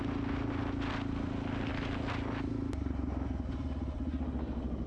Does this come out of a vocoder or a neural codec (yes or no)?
no